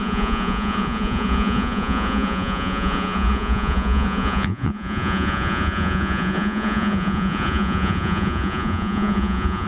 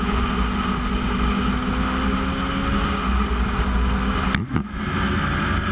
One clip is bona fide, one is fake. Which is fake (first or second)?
first